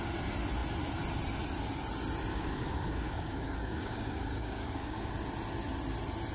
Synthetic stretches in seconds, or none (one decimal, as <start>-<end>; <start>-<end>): 2.3-5.1